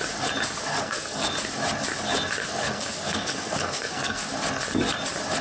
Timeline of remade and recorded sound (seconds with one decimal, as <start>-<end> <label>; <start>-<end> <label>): 0.0-0.7 recorded; 0.7-1.3 remade; 1.3-2.4 recorded; 2.4-4.3 remade; 4.3-5.4 recorded